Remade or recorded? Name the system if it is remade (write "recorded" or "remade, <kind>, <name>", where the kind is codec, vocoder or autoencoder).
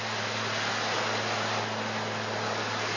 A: recorded